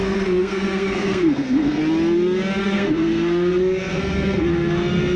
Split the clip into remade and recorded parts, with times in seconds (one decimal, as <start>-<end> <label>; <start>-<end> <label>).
0.0-1.8 remade; 1.8-2.6 recorded; 2.6-5.2 remade